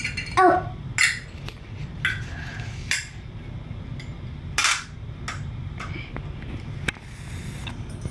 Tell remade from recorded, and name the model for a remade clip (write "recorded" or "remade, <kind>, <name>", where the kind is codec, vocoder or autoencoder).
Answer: recorded